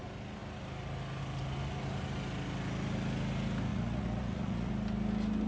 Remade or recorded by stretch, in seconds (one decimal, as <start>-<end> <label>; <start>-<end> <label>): 0.0-3.7 recorded; 3.7-4.7 remade; 4.7-5.5 recorded